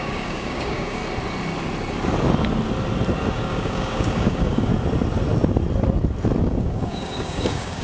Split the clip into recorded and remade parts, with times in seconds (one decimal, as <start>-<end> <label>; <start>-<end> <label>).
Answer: 0.0-1.0 remade; 1.0-3.3 recorded; 3.3-4.7 remade; 4.7-6.4 recorded; 6.4-7.8 remade